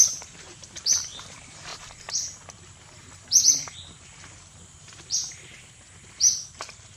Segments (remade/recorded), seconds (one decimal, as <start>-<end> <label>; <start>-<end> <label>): 0.0-1.7 remade; 1.7-4.0 recorded; 4.0-7.0 remade